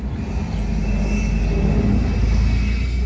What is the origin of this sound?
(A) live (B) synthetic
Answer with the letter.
A